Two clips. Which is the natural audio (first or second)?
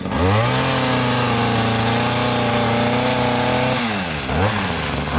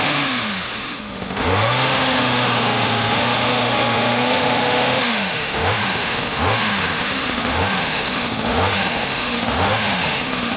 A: first